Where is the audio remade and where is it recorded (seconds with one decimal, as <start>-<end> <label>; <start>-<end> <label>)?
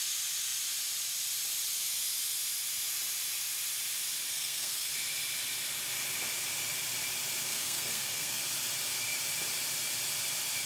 0.0-4.3 recorded; 4.3-4.9 remade; 4.9-7.5 recorded; 7.5-8.4 remade; 8.4-10.7 recorded